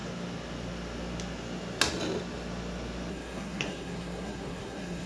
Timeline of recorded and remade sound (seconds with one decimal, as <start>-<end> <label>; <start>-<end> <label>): 0.0-3.1 recorded; 3.1-5.1 remade